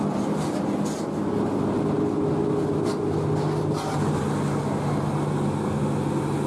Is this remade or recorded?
recorded